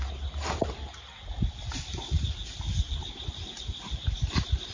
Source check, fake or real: real